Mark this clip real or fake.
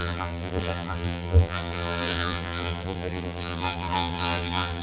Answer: fake